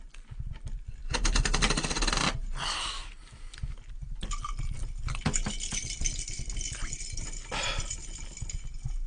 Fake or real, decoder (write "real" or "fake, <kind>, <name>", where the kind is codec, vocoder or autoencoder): real